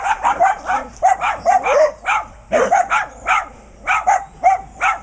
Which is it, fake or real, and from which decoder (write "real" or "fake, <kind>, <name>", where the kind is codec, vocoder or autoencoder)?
fake, vocoder, BigVGAN v2